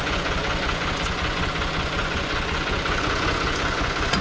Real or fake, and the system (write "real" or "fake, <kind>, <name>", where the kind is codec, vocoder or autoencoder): fake, vocoder, Vocos